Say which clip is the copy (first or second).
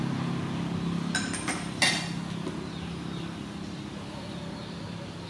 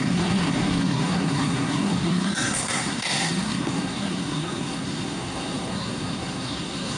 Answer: second